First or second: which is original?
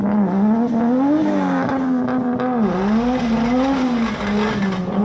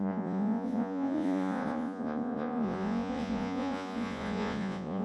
first